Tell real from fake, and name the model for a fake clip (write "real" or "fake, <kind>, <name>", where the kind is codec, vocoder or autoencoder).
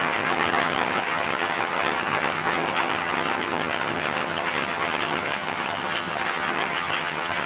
fake, vocoder, HiFi-GAN